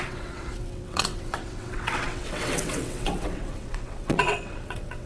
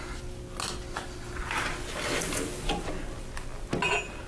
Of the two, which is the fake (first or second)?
first